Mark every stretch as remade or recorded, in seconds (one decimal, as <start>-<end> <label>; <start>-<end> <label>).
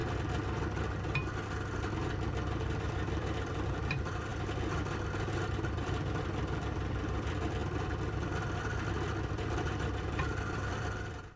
0.0-2.1 recorded; 2.1-4.3 remade; 4.3-5.4 recorded; 5.4-11.4 remade